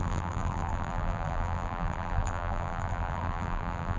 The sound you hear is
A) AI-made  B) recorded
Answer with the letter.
A